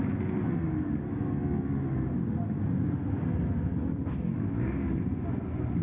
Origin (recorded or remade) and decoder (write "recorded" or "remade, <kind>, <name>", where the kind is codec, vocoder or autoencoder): recorded